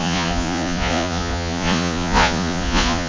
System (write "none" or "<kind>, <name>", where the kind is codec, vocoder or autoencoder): vocoder, Vocos